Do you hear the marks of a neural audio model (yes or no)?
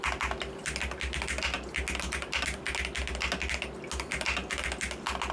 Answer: no